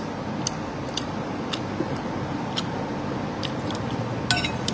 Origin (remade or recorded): recorded